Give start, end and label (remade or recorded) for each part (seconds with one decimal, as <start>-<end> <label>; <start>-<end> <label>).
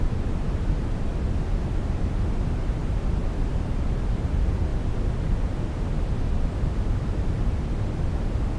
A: 0.0-1.1 remade; 1.1-3.5 recorded; 3.5-8.6 remade